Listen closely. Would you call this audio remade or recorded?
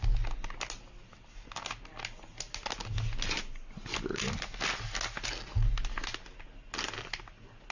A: recorded